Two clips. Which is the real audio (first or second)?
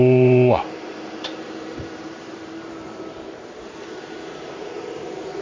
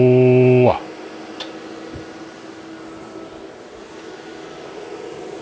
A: second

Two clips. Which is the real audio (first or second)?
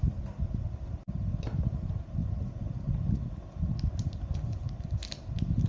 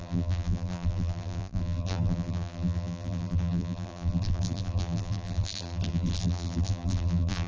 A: first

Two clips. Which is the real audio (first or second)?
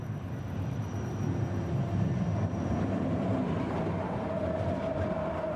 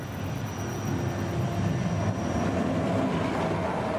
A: second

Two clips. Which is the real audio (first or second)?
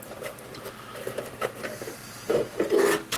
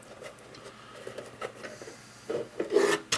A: second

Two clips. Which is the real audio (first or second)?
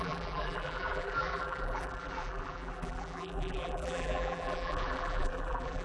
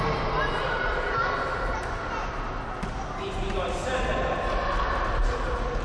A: second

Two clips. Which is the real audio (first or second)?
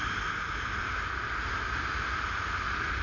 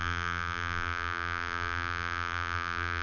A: first